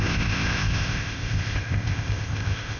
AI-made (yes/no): yes